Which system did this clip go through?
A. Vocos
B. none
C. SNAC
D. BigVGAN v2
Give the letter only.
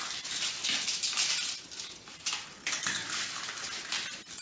B